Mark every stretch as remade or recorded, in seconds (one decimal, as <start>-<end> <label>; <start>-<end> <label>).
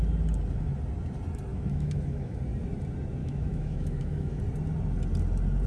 0.0-1.5 recorded; 1.5-2.4 remade; 2.4-3.2 recorded; 3.2-4.4 remade; 4.4-5.7 recorded